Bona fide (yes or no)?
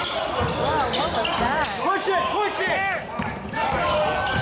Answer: yes